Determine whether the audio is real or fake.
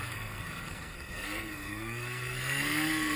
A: fake